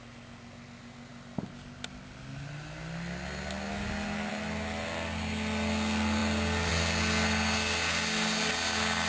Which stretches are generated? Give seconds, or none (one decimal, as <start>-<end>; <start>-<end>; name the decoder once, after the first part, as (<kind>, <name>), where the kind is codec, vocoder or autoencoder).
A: none